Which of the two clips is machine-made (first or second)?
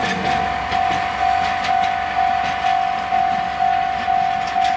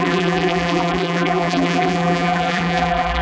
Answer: second